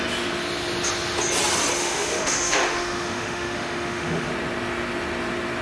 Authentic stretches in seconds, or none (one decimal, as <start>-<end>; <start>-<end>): 0.0-1.8; 4.3-5.6